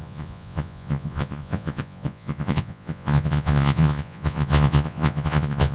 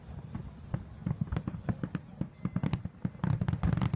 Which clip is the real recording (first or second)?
second